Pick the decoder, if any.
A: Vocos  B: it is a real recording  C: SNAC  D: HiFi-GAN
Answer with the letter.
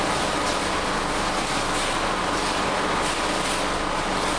B